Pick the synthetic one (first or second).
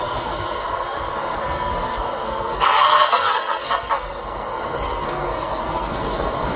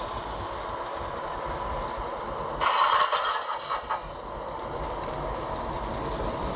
first